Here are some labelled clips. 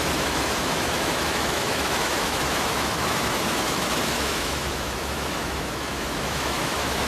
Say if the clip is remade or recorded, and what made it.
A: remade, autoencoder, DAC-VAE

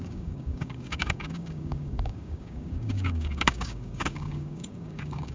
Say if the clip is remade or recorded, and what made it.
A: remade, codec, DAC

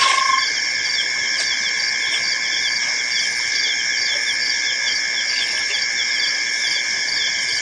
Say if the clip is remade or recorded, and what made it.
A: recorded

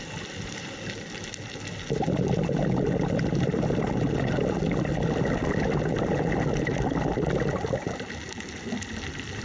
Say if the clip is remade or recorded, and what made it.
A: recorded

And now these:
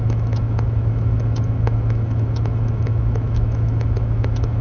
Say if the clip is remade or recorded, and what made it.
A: remade, autoencoder, DAC-VAE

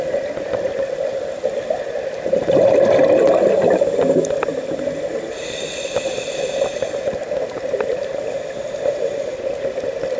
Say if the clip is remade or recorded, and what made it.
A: recorded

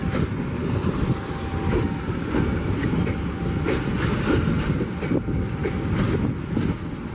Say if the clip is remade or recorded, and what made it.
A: recorded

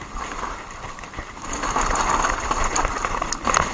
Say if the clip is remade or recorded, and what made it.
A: recorded